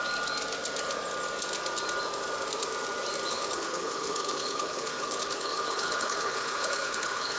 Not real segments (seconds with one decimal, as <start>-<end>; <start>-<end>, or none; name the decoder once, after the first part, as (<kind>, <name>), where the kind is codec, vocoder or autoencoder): 3.3-7.4 (codec, HILCodec)